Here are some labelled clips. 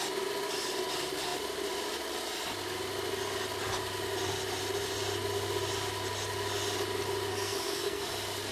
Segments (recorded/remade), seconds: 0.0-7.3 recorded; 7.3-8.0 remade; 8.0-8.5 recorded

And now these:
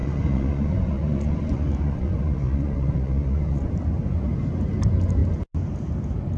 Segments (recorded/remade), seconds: 0.0-3.7 remade; 3.7-6.4 recorded